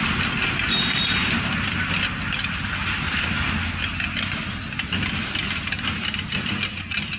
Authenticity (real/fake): real